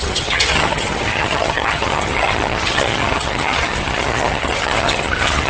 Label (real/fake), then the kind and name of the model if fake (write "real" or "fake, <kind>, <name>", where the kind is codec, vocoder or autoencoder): fake, vocoder, HiFi-GAN